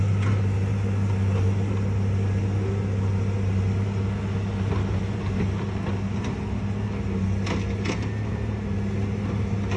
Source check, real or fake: real